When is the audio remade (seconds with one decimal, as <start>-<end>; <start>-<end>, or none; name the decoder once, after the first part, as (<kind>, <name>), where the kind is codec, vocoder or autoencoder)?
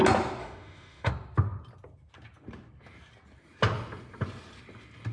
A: 0.4-1.1 (autoencoder, DAC-VAE)